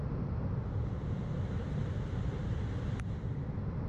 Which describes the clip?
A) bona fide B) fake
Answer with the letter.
A